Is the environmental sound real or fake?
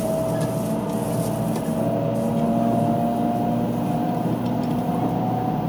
real